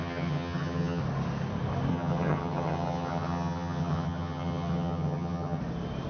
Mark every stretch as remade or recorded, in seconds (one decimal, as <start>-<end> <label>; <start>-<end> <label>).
0.0-1.0 remade; 1.0-1.9 recorded; 1.9-5.6 remade; 5.6-6.1 recorded